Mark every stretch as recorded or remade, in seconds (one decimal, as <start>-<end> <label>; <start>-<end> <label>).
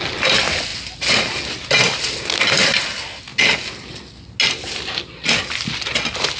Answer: 0.0-6.4 recorded